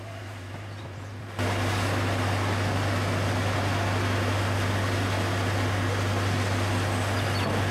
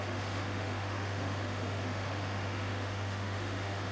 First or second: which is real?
first